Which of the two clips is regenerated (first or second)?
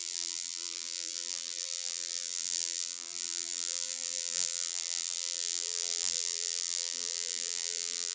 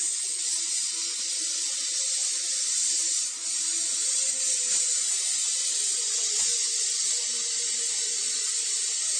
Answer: first